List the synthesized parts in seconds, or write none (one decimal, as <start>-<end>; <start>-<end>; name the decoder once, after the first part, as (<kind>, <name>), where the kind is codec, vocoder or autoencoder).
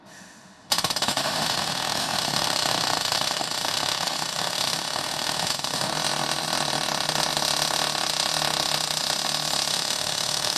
0.0-5.9 (autoencoder, DAC-VAE); 9.7-10.6